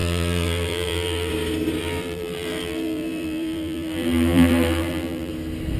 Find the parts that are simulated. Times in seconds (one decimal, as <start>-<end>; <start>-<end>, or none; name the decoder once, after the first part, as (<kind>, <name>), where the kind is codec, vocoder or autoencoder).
0.0-1.3 (vocoder, BigVGAN v2); 1.8-5.3